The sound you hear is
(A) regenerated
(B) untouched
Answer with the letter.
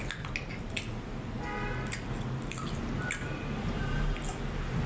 B